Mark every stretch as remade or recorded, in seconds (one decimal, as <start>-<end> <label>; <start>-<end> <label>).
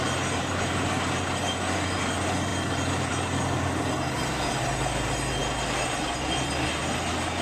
0.0-7.4 recorded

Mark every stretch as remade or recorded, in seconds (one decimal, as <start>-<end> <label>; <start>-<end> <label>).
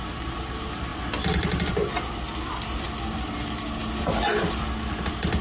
0.0-5.4 recorded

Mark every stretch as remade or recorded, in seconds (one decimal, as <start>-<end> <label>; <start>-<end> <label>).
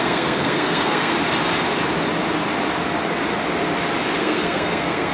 0.0-1.1 remade; 1.1-4.2 recorded; 4.2-5.1 remade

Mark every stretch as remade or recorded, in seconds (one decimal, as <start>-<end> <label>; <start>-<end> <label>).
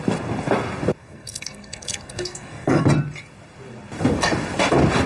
0.0-1.0 recorded; 1.0-2.8 remade; 2.8-5.1 recorded